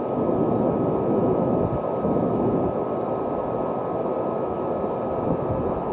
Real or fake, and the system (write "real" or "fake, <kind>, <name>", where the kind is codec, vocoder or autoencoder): real